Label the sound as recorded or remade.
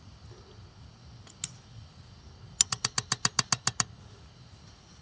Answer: recorded